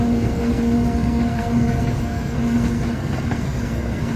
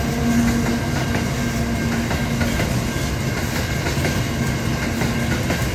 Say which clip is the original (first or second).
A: second